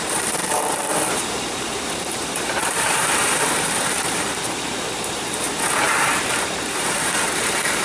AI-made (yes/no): yes